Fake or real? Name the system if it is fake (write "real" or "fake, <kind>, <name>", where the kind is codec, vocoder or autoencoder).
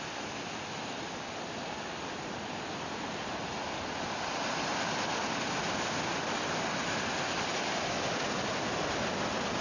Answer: real